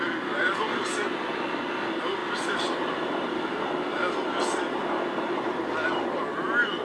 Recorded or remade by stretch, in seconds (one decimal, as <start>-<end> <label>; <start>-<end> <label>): 0.0-6.8 recorded